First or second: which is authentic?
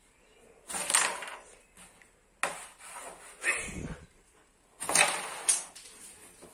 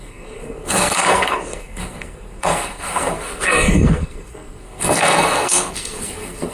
first